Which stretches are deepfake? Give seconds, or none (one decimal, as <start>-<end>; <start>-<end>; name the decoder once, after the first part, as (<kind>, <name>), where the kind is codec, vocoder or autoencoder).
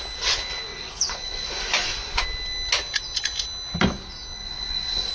0.7-2.2 (vocoder, Vocos); 4.3-5.1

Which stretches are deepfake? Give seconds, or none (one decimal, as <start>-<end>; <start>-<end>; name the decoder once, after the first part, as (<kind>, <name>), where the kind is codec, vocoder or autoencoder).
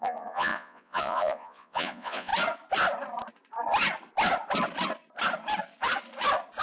0.0-2.3 (vocoder, Vocos)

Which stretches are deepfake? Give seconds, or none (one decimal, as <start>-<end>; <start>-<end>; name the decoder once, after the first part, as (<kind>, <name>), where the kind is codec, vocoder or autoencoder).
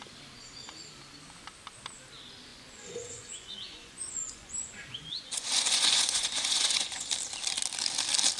2.5-7.1 (vocoder, Vocos)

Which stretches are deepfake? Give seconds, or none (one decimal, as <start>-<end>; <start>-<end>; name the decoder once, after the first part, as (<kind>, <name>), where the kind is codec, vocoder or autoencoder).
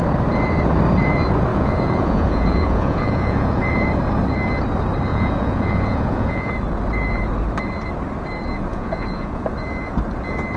1.5-3.6 (vocoder, Vocos); 5.1-6.5; 8.7-9.4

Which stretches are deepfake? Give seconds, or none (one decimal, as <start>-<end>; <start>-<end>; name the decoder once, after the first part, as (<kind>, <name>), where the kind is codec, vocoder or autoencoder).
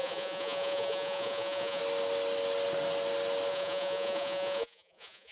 0.0-1.8 (vocoder, Vocos); 3.5-5.3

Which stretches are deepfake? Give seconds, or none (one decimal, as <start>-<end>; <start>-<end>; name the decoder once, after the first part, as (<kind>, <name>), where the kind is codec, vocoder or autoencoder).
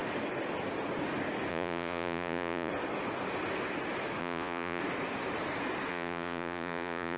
1.5-2.7 (vocoder, Vocos); 4.2-4.8; 5.9-7.2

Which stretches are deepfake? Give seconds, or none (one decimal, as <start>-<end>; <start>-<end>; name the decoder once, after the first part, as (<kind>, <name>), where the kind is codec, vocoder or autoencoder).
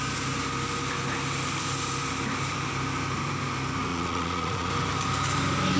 3.9-4.7 (vocoder, Vocos)